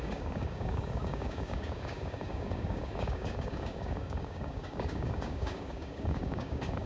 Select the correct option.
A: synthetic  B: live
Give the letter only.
A